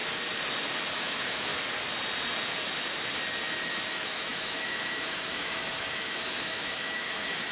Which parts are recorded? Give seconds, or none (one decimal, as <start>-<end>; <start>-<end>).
0.0-0.9; 1.5-3.6